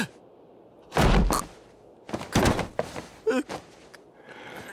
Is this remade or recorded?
recorded